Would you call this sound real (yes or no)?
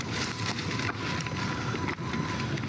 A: yes